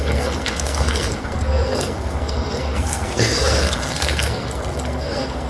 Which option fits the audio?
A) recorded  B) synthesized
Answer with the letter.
B